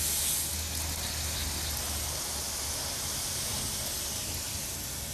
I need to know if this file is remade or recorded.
recorded